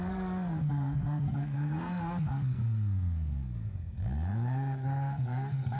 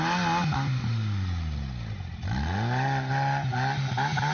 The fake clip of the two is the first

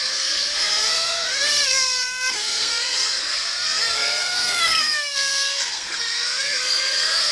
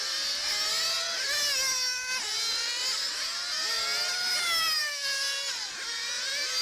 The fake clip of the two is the first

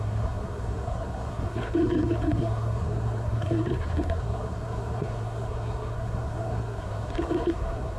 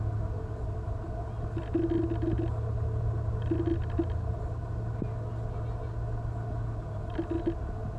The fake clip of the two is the first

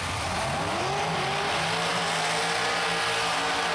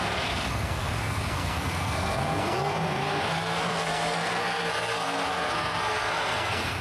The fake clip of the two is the second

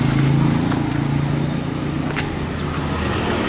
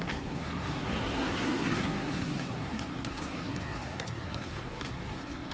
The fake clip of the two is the second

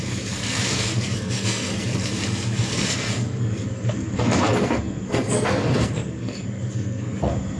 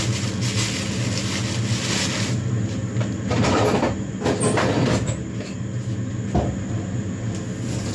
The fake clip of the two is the first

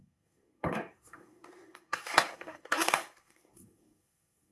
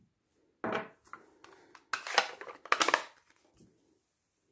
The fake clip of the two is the first